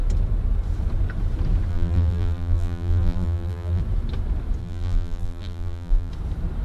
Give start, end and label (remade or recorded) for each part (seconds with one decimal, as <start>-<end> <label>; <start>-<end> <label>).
0.0-1.7 recorded; 1.7-3.8 remade; 3.8-4.6 recorded; 4.6-6.1 remade; 6.1-6.6 recorded